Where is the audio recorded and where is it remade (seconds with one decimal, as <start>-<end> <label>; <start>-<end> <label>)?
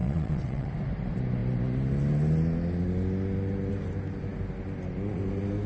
0.0-0.7 remade; 0.7-5.7 recorded